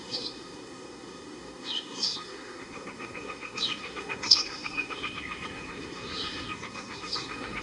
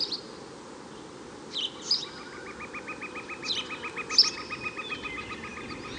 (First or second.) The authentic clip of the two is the second